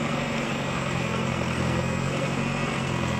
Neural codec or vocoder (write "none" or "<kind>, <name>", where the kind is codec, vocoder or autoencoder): codec, SNAC